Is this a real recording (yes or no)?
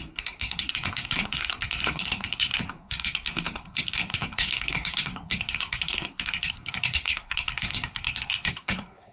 no